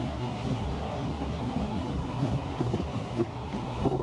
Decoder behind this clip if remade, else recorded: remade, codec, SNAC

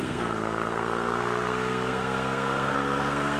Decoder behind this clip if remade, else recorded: remade, codec, SNAC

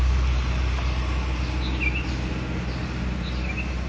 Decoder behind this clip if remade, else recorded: recorded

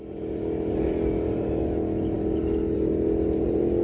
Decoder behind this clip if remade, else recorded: recorded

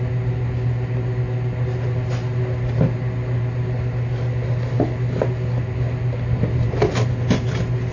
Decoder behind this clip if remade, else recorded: recorded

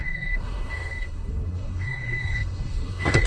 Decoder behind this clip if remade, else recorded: remade, codec, SNAC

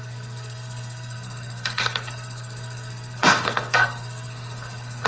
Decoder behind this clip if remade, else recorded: remade, codec, SNAC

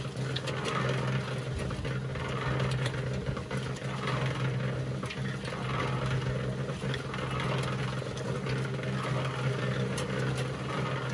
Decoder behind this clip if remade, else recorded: recorded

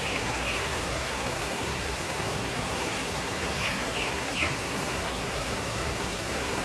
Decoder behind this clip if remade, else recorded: remade, codec, SNAC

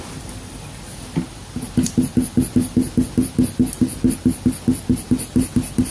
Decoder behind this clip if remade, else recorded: recorded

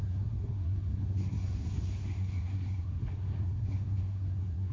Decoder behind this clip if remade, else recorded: remade, codec, SNAC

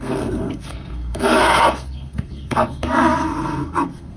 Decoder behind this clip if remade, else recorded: remade, codec, SNAC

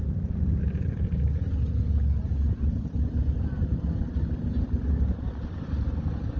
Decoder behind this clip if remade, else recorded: recorded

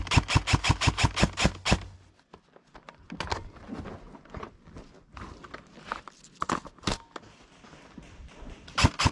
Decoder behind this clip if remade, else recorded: recorded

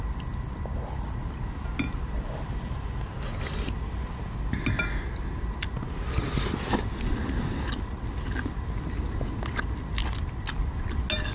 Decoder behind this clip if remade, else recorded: recorded